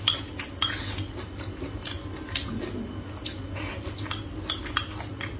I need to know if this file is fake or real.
real